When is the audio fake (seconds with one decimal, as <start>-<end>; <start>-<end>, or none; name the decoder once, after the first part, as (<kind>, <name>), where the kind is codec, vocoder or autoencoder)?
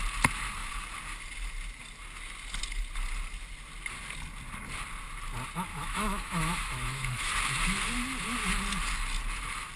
5.7-7.3 (autoencoder, DAC-VAE)